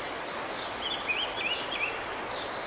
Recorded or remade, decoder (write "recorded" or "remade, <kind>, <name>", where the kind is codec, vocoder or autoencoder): recorded